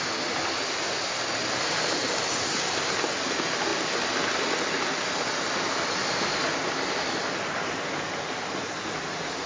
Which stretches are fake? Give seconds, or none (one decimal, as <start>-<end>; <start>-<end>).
none